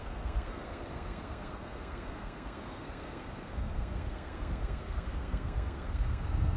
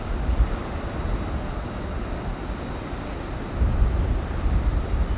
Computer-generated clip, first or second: first